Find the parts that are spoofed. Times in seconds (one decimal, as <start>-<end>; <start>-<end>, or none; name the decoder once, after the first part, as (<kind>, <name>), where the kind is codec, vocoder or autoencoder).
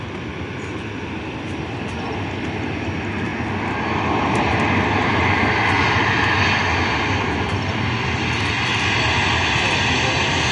none